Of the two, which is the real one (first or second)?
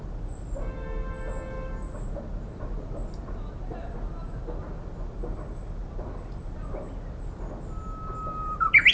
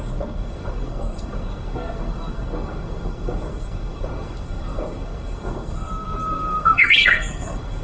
first